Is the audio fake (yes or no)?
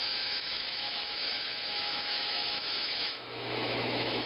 yes